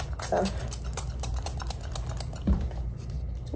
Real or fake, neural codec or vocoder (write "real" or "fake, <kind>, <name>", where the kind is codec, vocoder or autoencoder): real